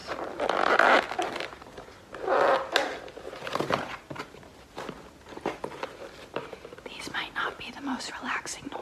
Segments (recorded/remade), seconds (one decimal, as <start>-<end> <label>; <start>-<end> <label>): 0.0-8.8 recorded